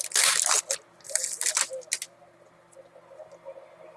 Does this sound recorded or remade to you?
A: recorded